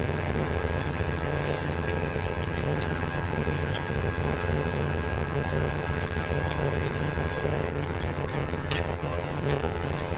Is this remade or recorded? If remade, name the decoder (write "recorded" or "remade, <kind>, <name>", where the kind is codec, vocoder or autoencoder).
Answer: remade, vocoder, HiFi-GAN